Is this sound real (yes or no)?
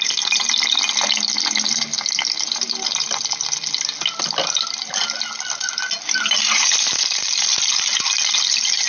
yes